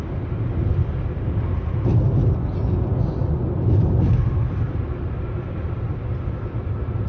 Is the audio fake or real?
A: real